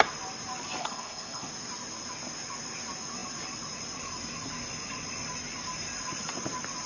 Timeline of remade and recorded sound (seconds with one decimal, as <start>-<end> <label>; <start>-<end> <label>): 0.0-0.8 recorded; 0.8-1.5 remade; 1.5-6.9 recorded